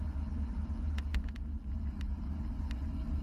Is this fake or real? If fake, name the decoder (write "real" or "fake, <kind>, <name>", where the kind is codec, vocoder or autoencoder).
real